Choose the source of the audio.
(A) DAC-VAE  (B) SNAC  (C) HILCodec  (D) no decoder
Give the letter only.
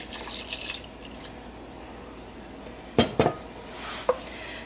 D